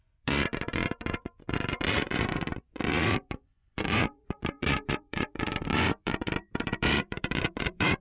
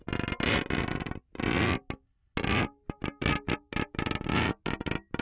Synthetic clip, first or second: first